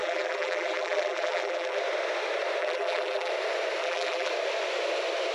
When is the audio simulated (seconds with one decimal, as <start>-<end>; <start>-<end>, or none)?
0.0-1.8; 2.6-3.3; 3.8-4.3